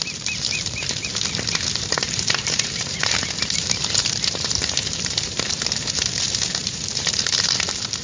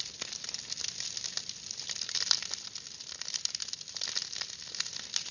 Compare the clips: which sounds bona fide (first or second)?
second